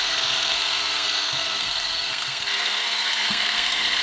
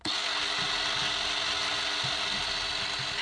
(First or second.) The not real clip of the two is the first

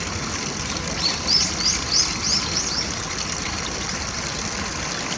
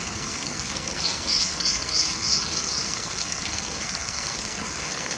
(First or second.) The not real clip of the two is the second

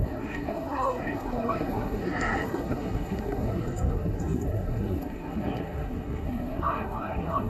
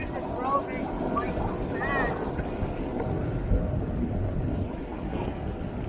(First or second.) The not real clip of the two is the first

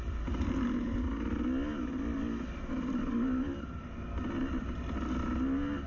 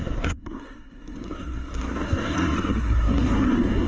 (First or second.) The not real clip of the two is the second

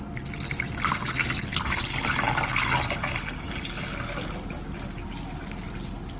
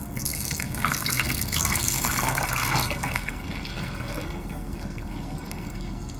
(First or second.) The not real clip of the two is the second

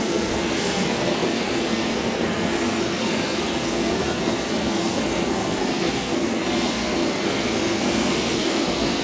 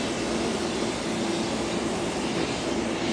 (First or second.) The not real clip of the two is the first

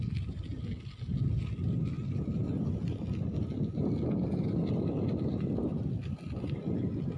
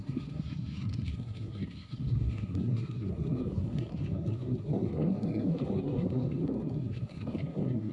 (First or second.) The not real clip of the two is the second